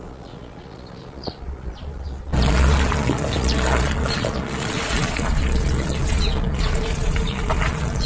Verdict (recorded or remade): remade